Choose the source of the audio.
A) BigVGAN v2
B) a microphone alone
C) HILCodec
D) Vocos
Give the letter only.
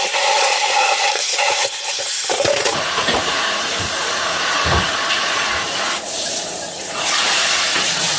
D